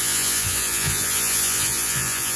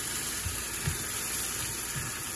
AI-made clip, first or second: first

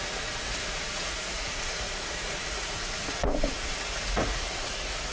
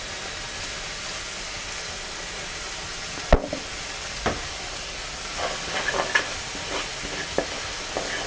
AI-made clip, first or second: first